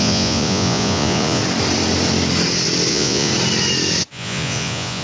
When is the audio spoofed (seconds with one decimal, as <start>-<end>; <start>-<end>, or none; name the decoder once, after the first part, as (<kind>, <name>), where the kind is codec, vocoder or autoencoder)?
0.0-1.4 (vocoder, Vocos); 2.9-3.3; 4.0-5.0